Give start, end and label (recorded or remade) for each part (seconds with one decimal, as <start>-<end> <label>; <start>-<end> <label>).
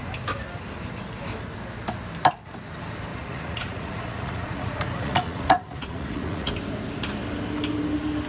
0.0-3.1 recorded; 3.1-6.5 remade; 6.5-8.3 recorded